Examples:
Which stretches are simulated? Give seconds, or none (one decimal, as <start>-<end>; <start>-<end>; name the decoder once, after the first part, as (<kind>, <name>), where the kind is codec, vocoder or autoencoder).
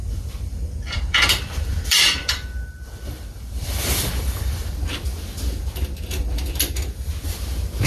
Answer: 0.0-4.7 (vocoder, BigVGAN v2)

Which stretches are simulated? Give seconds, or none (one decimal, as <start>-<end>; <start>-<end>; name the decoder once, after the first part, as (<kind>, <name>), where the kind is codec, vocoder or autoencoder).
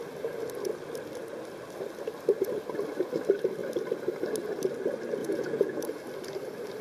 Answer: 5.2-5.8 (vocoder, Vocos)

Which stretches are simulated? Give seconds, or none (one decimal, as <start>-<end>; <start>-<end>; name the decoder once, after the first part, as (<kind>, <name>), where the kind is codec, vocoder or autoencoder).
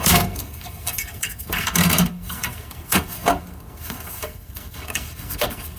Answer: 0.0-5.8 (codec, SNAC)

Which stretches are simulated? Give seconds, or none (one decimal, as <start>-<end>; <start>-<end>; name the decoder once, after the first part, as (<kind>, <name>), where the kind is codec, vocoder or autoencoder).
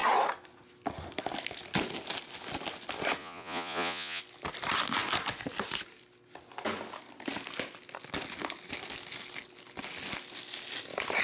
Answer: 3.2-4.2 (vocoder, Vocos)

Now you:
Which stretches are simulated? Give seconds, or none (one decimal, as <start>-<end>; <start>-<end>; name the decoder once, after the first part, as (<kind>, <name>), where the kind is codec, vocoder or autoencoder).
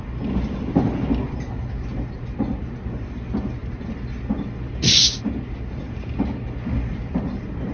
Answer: none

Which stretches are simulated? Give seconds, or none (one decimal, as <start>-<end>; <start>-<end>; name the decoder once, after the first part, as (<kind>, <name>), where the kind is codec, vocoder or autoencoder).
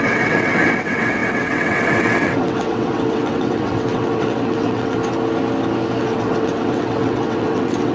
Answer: 0.0-5.0 (vocoder, WaveNeXt); 6.0-7.9